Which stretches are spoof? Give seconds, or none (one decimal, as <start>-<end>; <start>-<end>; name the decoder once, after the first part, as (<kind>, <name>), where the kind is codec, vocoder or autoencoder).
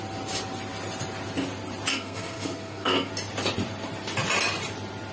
1.9-3.1 (codec, SNAC)